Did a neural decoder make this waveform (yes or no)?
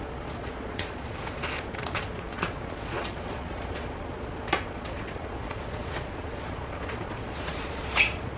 yes